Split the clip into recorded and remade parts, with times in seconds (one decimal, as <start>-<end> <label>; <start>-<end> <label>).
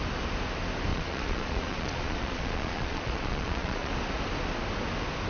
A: 0.0-0.9 recorded; 0.9-3.9 remade; 3.9-5.3 recorded